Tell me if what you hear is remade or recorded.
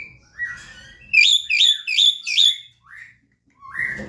recorded